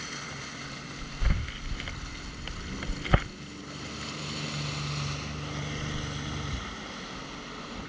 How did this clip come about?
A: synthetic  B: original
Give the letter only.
B